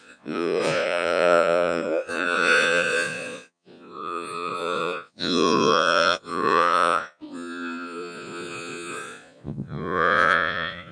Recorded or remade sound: remade